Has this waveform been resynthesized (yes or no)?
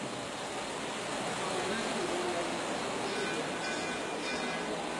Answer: no